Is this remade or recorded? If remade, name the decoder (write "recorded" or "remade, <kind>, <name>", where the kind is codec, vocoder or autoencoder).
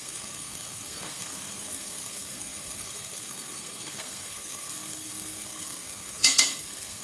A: remade, codec, SNAC